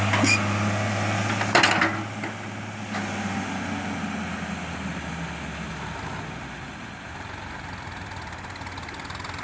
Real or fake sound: real